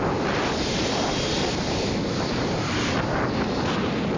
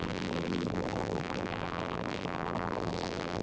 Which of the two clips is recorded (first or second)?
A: first